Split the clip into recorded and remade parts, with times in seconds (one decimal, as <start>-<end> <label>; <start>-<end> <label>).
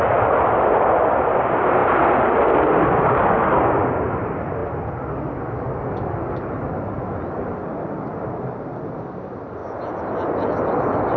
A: 0.0-1.8 remade; 1.8-3.8 recorded; 3.8-11.2 remade